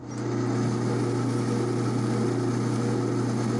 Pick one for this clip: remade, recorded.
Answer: recorded